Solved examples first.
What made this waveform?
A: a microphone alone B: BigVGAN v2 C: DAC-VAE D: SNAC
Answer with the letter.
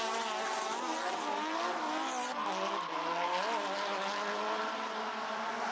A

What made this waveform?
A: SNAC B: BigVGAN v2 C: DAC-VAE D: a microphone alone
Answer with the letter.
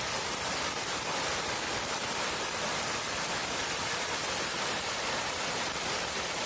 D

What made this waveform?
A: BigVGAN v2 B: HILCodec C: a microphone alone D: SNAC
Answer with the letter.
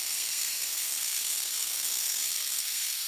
D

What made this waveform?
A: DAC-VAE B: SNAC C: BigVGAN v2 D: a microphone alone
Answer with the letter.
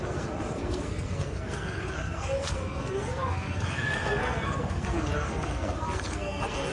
B